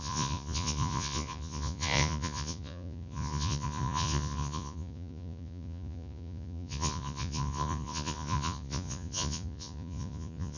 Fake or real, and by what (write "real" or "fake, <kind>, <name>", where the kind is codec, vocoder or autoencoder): fake, vocoder, Vocos